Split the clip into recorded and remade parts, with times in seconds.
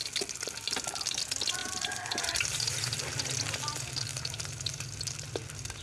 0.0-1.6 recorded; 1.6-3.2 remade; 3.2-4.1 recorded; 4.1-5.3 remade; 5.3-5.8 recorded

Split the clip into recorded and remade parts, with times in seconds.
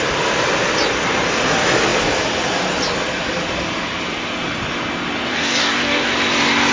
0.0-5.3 recorded; 5.3-6.1 remade; 6.1-6.7 recorded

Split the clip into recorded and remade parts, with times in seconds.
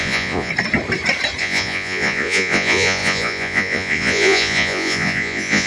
0.0-0.5 remade; 0.5-1.4 recorded; 1.4-5.7 remade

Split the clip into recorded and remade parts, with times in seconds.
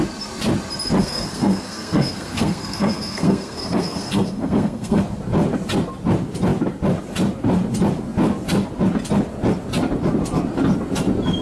0.0-1.0 recorded; 1.0-5.0 remade; 5.0-11.4 recorded